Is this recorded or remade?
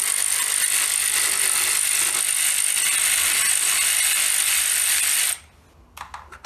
recorded